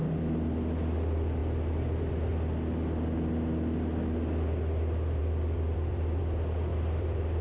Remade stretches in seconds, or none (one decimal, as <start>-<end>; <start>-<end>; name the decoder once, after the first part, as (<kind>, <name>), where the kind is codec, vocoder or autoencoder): 5.2-6.2 (vocoder, BigVGAN v2); 6.7-7.4

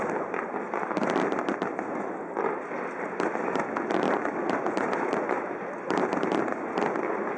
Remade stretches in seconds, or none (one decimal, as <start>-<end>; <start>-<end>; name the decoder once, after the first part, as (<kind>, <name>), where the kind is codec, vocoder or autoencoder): none

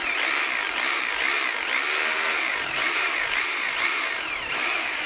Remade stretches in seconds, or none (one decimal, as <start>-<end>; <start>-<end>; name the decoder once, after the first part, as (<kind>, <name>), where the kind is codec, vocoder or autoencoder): 2.5-5.1 (vocoder, BigVGAN v2)

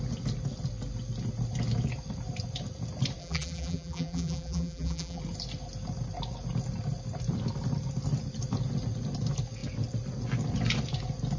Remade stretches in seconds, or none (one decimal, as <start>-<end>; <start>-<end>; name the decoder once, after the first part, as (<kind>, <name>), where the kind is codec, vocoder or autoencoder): 3.2-5.2 (vocoder, BigVGAN v2)

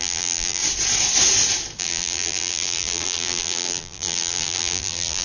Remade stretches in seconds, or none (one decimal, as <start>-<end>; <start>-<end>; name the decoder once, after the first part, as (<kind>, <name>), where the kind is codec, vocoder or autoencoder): 0.0-0.6 (vocoder, BigVGAN v2); 1.8-5.2

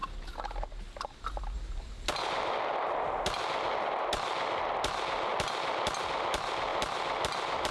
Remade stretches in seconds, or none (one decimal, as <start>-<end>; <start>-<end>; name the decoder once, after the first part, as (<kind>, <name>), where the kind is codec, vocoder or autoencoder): none

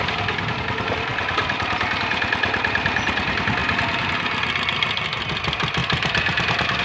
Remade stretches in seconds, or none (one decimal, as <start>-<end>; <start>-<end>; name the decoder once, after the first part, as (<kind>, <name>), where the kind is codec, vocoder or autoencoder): 5.8-6.8 (vocoder, BigVGAN v2)